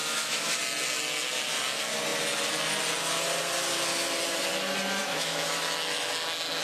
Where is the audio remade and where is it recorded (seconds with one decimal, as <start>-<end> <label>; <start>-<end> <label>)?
0.0-0.6 remade; 0.6-5.0 recorded; 5.0-6.1 remade; 6.1-6.6 recorded